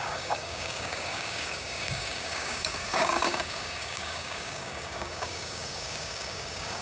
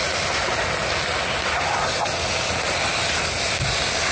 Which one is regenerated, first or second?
first